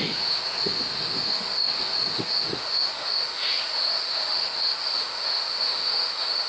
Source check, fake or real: fake